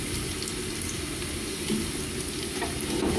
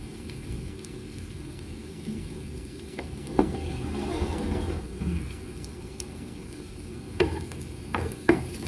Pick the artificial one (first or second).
second